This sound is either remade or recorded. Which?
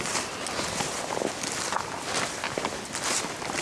recorded